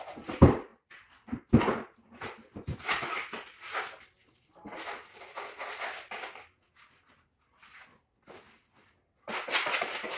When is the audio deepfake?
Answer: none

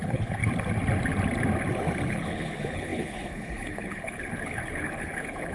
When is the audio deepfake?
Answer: 0.0-0.4 (codec, HILCodec); 2.1-5.5